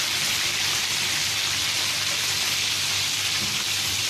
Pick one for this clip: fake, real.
real